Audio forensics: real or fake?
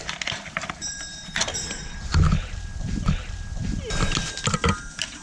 real